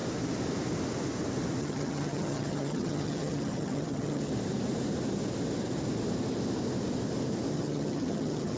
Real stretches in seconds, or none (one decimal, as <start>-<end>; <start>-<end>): 0.0-1.6; 4.3-7.5